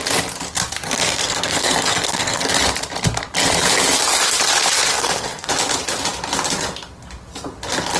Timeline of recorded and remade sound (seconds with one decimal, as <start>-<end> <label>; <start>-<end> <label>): 0.0-0.8 recorded; 0.8-2.5 remade; 2.5-4.9 recorded; 4.9-5.5 remade; 5.5-8.0 recorded